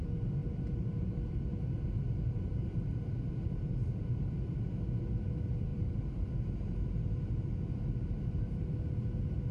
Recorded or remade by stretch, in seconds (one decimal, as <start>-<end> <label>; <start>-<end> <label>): 0.0-5.7 recorded; 5.7-6.3 remade; 6.3-9.5 recorded